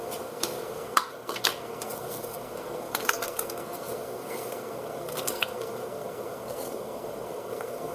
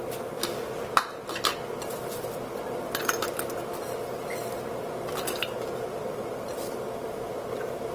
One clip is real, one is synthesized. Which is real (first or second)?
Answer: second